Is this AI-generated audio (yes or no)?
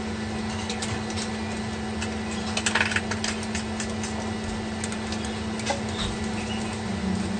no